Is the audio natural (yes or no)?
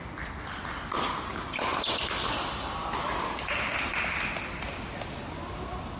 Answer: yes